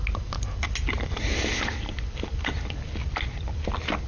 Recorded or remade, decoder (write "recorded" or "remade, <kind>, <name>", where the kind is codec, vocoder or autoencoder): recorded